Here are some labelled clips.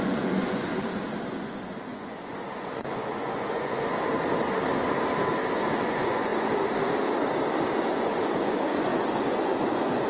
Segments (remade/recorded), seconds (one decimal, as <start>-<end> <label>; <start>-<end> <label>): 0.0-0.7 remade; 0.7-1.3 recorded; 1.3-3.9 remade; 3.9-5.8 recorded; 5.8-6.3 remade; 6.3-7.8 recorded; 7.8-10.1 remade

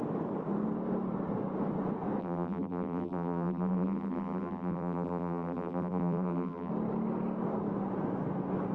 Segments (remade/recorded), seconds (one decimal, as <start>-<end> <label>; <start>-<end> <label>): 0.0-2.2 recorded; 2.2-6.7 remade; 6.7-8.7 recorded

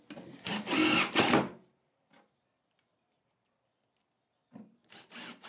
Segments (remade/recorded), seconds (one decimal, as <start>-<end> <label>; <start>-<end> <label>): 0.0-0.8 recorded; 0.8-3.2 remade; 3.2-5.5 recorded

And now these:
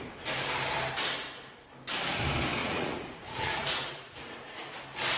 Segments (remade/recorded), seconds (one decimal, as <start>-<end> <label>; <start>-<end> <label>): 0.0-2.6 recorded; 2.6-4.7 remade; 4.7-5.2 recorded

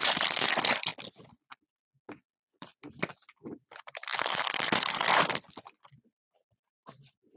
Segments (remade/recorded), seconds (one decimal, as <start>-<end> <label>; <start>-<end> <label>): 0.0-2.7 remade; 2.7-3.6 recorded; 3.6-7.4 remade

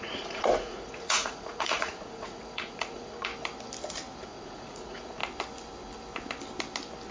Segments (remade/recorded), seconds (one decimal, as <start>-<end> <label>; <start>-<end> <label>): 0.0-3.3 remade; 3.3-4.2 recorded; 4.2-5.2 remade; 5.2-7.1 recorded

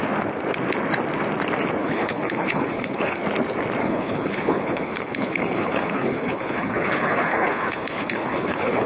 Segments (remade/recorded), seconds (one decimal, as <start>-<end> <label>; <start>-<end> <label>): 0.0-1.8 recorded; 1.8-3.2 remade; 3.2-3.8 recorded; 3.8-8.9 remade